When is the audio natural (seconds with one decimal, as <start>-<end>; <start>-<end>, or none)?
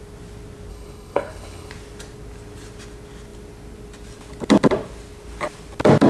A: 0.0-0.7; 1.7-6.1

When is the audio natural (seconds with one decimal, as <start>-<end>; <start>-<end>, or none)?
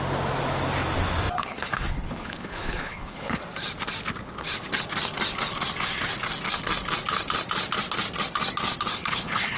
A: 0.0-1.4; 3.4-8.9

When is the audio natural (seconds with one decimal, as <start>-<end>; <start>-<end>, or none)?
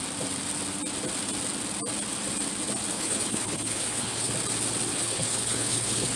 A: 0.0-2.9; 4.3-4.9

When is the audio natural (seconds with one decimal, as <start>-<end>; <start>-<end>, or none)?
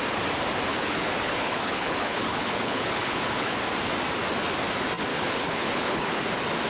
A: 0.0-0.7; 3.6-5.1; 6.2-6.7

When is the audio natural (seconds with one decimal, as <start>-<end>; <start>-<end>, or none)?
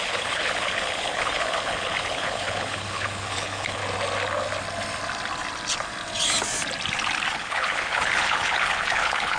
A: 3.8-7.3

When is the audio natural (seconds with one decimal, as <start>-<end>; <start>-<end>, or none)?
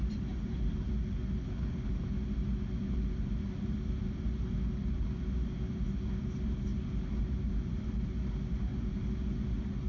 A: 0.0-1.4; 1.9-9.9